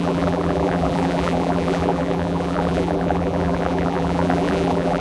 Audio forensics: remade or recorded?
remade